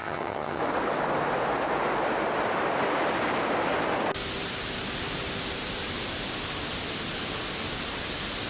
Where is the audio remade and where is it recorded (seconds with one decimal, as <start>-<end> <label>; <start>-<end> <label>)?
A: 0.0-0.6 remade; 0.6-8.5 recorded

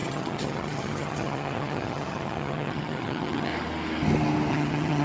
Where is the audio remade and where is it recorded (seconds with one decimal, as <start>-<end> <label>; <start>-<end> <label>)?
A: 0.0-3.5 remade; 3.5-4.5 recorded; 4.5-5.0 remade

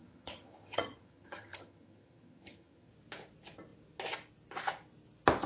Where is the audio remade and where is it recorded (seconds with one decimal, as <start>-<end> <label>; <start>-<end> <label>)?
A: 0.0-2.9 remade; 2.9-5.5 recorded

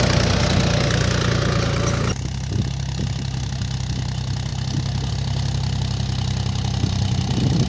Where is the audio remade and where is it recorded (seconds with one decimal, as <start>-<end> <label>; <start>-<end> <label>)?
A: 0.0-7.7 recorded